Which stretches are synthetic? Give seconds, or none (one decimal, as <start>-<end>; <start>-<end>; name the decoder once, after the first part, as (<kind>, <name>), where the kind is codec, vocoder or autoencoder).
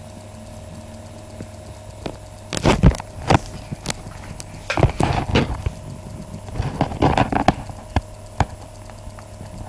none